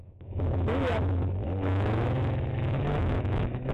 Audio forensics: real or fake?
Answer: fake